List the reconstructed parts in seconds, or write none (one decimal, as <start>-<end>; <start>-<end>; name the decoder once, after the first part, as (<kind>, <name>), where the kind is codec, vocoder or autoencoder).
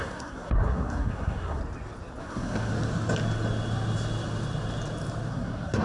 0.0-1.6 (codec, SNAC); 2.2-2.7; 5.3-5.8